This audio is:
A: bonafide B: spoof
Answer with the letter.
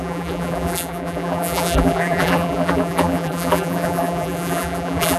B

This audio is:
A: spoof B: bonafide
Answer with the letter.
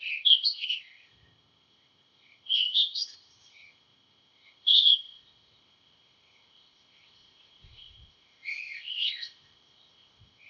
A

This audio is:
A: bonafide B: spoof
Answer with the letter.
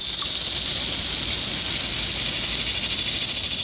A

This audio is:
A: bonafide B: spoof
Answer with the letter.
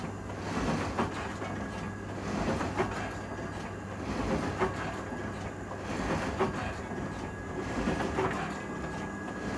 A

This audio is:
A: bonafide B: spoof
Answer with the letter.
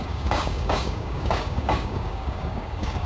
B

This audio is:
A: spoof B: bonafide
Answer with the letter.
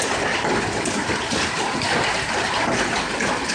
B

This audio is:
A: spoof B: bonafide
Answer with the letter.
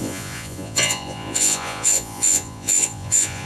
A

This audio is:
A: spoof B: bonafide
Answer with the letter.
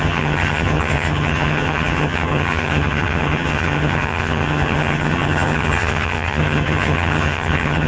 A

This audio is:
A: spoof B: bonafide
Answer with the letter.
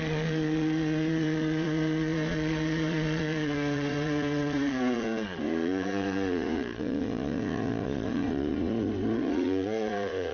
A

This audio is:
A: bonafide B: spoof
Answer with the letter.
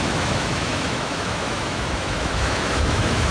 B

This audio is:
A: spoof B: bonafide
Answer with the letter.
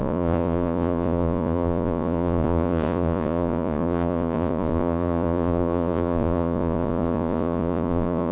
A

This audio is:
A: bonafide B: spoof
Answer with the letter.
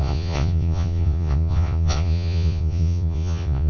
B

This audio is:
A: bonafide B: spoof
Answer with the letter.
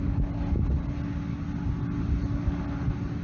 A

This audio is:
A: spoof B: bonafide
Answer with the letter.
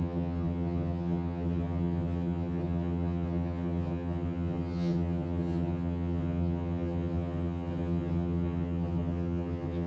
A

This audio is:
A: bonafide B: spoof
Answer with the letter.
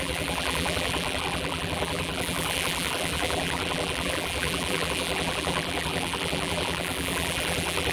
B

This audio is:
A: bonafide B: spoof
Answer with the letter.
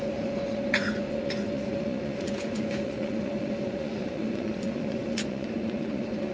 B